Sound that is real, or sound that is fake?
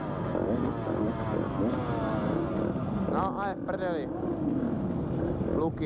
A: real